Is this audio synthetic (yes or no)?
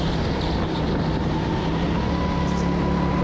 no